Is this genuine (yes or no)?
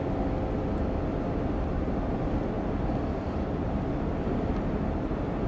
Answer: yes